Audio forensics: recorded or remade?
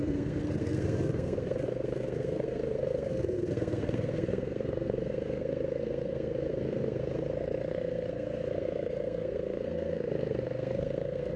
remade